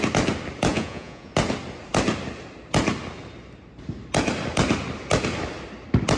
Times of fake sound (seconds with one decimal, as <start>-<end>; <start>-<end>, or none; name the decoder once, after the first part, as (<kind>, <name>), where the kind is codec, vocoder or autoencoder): 0.7-1.3 (vocoder, Vocos)